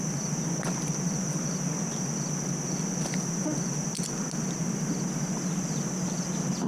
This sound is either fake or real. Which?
real